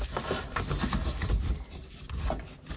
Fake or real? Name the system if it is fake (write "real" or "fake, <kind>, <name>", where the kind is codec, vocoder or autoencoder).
real